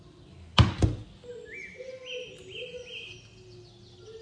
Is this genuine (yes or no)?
yes